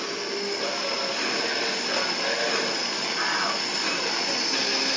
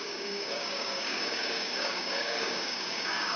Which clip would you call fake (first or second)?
second